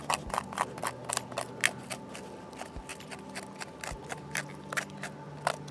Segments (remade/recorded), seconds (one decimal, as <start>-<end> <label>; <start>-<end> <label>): 0.0-5.7 recorded